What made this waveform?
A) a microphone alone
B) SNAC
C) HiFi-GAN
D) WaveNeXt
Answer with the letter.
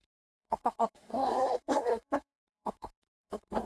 B